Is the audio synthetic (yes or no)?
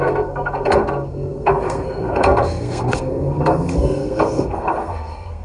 yes